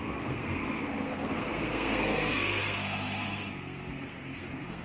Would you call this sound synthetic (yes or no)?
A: yes